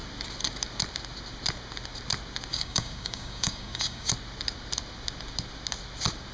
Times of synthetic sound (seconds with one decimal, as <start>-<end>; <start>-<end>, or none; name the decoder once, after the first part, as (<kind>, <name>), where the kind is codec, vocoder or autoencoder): 2.5-4.1 (codec, DAC)